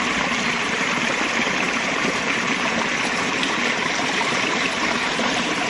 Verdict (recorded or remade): remade